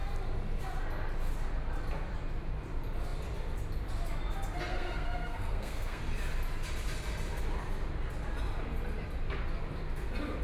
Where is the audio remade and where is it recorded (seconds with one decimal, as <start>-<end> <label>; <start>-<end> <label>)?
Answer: 0.0-4.7 recorded; 4.7-6.0 remade; 6.0-10.4 recorded